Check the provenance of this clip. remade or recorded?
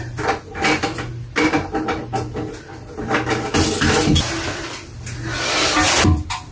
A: recorded